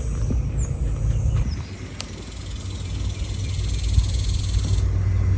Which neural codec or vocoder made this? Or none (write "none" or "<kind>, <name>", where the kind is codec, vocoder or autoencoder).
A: none